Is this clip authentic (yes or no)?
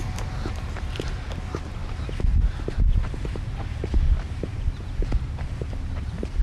yes